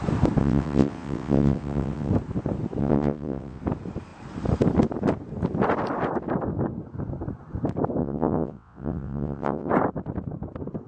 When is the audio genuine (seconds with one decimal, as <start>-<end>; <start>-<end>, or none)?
0.0-0.4; 2.1-2.8; 3.6-8.0; 9.7-10.9